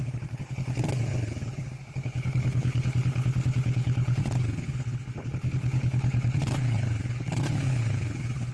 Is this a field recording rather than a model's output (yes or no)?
no